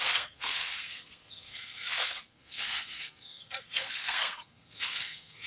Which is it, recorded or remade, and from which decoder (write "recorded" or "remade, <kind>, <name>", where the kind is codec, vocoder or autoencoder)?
remade, codec, SNAC